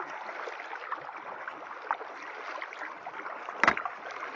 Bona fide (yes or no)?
yes